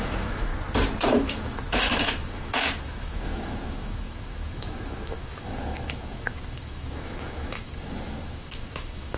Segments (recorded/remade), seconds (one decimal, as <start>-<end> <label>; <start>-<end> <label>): 0.0-0.5 remade; 0.5-1.1 recorded; 1.1-9.2 remade